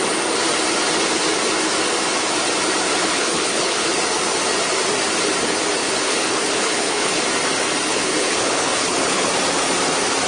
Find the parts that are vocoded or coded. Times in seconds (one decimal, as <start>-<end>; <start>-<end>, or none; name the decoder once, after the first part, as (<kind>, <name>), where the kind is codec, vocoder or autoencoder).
3.0-3.9 (codec, HILCodec); 5.8-7.2; 7.9-9.3